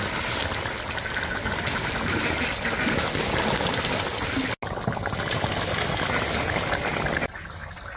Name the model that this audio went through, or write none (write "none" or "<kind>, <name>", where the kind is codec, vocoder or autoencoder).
none